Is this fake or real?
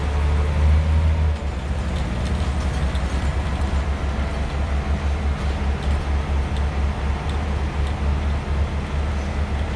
real